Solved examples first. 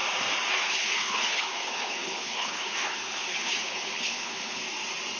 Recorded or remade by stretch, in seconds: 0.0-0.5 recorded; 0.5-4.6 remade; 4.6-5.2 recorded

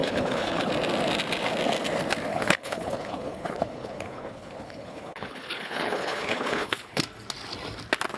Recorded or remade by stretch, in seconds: 0.0-0.7 remade; 0.7-2.3 recorded; 2.3-7.0 remade; 7.0-8.2 recorded

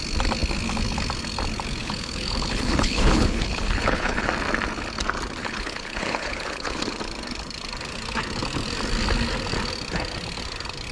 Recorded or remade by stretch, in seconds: 0.0-1.8 recorded; 1.8-4.3 remade; 4.3-5.4 recorded; 5.4-6.8 remade; 6.8-10.9 recorded

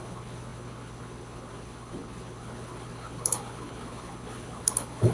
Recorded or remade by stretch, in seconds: 0.0-5.1 remade

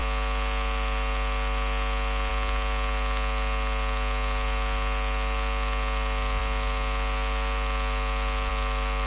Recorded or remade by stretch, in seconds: 0.0-9.1 recorded

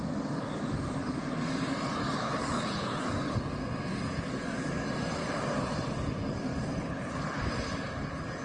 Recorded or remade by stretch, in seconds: 0.0-2.2 recorded; 2.2-3.0 remade; 3.0-6.8 recorded; 6.8-7.4 remade; 7.4-8.4 recorded

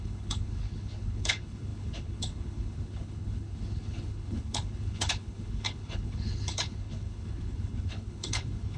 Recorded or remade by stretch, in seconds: 0.0-8.8 remade